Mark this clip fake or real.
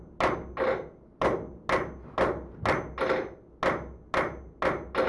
real